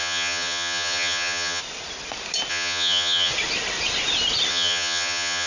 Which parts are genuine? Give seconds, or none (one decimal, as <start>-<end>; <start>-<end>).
1.6-2.5; 3.3-4.5